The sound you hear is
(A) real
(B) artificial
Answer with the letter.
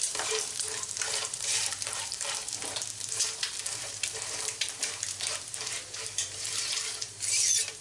B